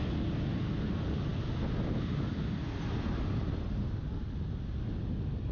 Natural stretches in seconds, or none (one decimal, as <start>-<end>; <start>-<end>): 0.0-5.5